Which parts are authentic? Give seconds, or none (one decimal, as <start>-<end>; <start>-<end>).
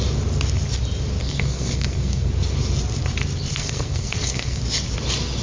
0.0-1.2; 2.3-3.5; 4.6-5.4